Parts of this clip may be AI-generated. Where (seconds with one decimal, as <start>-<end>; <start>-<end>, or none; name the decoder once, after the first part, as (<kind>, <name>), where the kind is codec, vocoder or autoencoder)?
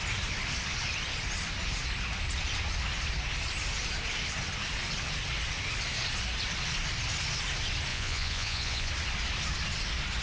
7.9-8.9 (vocoder, Vocos)